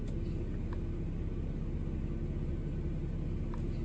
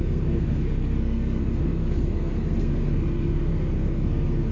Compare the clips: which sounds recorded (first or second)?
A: first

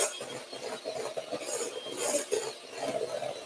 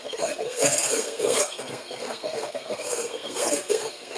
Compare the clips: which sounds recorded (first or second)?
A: first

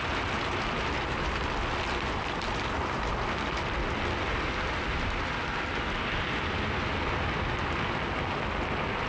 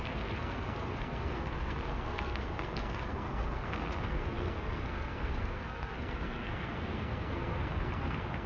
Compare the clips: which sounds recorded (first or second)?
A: first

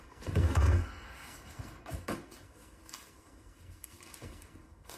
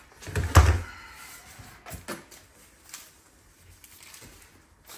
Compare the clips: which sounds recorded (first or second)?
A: second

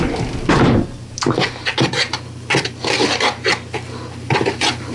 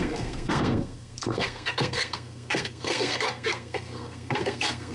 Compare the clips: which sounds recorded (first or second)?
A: first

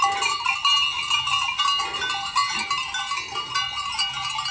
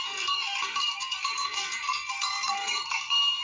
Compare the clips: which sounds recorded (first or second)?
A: first